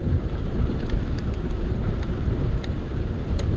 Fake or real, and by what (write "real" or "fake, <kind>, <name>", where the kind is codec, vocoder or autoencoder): fake, vocoder, BigVGAN v2